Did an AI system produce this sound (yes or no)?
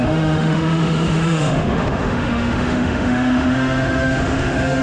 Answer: yes